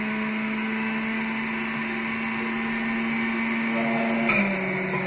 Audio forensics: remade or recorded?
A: recorded